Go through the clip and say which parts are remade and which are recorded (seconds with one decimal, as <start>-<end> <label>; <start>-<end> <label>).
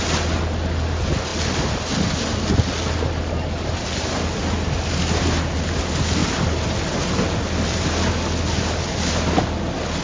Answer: 0.0-10.0 recorded